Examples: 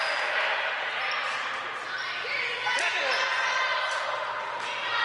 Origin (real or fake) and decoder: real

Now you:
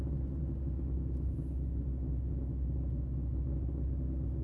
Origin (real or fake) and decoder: real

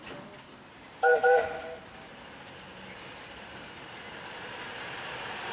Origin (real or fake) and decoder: real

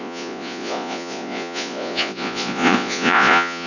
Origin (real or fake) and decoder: fake, vocoder, Vocos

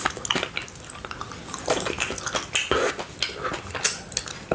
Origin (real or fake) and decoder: real